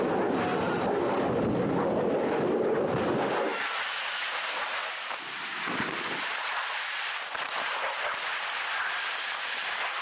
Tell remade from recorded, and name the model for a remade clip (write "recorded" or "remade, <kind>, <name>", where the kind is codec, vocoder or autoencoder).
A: recorded